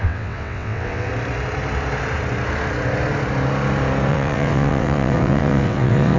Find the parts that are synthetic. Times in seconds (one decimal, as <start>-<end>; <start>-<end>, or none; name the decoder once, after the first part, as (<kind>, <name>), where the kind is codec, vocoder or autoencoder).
0.0-1.1 (vocoder, WaveNeXt); 4.1-6.2